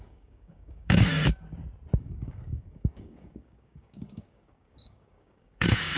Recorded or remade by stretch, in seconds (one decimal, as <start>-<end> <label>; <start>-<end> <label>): 0.0-1.1 remade; 1.1-2.0 recorded; 2.0-6.0 remade